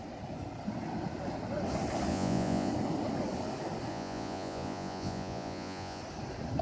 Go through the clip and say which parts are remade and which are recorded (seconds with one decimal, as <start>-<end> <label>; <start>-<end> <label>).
0.0-2.1 recorded; 2.1-2.7 remade; 2.7-3.9 recorded; 3.9-6.0 remade; 6.0-6.6 recorded